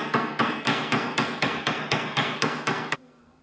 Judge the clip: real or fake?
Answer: fake